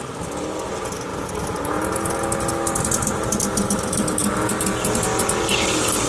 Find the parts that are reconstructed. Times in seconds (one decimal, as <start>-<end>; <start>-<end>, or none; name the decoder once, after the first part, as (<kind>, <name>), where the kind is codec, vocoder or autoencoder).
none